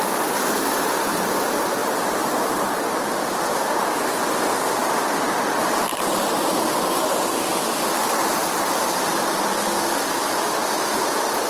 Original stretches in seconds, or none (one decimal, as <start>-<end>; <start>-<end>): 0.0-1.8; 3.2-11.5